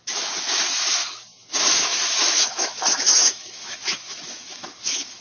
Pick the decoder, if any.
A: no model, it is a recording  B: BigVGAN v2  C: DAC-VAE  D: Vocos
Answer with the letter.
C